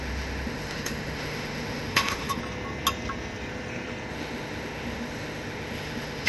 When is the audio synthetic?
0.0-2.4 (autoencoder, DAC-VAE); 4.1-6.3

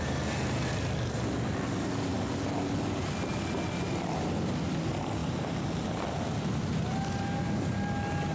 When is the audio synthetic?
none

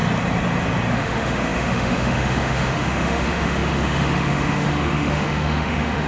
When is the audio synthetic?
0.9-6.1 (autoencoder, DAC-VAE)

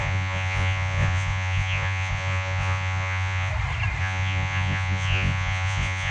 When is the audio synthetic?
0.0-3.5 (vocoder, Vocos); 4.0-6.1